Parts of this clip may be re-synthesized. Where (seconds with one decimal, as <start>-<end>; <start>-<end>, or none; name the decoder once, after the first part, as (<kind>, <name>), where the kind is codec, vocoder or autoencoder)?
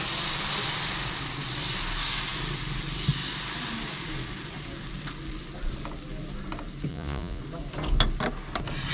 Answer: 6.9-7.4 (vocoder, Vocos)